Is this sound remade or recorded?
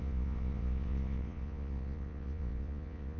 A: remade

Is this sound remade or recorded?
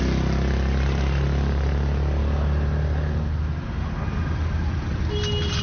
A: recorded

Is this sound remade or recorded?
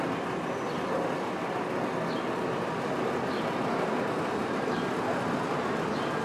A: recorded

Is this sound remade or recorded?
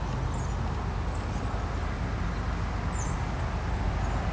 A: recorded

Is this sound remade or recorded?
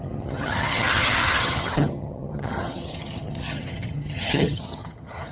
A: remade